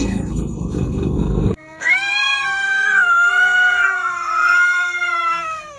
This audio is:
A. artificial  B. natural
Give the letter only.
A